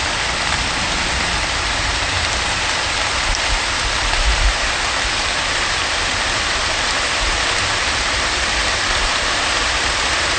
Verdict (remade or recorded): remade